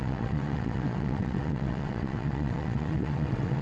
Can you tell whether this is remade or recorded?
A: remade